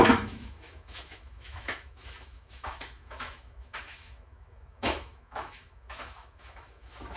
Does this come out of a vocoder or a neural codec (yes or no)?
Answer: yes